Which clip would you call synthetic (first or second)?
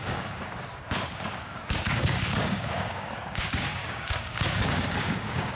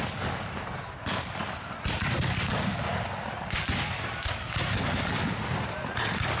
first